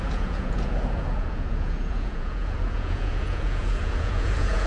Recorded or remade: remade